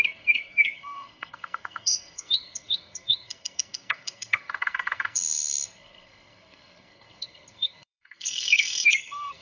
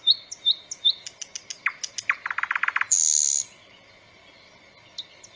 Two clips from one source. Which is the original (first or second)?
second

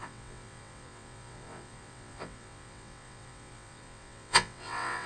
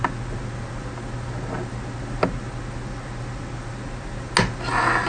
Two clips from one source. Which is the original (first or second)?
second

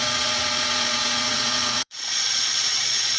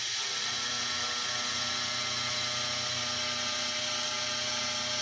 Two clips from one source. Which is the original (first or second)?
second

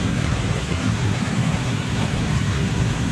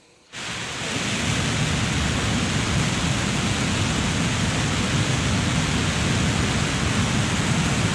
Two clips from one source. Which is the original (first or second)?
second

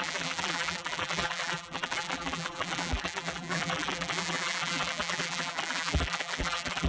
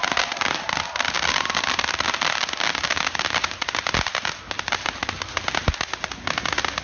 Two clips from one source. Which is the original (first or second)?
second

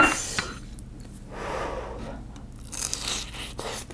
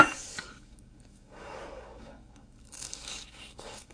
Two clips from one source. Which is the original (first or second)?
first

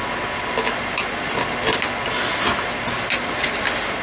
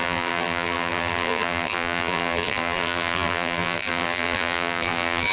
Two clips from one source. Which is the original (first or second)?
first